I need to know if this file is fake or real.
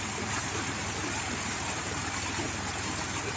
fake